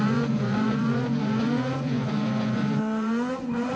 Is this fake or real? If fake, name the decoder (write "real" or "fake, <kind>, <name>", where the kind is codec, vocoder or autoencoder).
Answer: fake, vocoder, Vocos